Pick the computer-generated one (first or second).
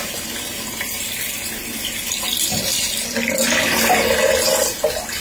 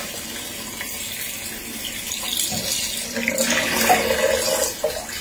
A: first